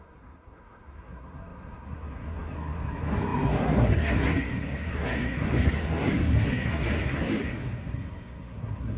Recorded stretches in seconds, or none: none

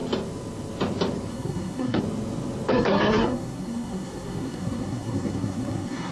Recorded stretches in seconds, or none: 0.0-1.3; 2.0-2.7

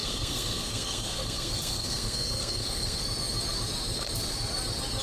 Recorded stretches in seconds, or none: 3.0-5.0

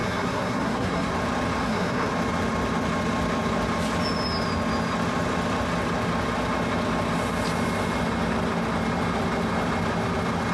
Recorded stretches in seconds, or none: 1.1-1.6; 2.1-10.5